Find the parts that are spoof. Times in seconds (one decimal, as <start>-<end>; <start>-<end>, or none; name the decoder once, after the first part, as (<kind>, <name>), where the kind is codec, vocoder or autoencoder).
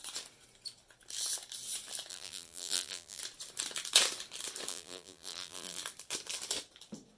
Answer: 2.1-3.2 (vocoder, BigVGAN v2); 4.7-5.8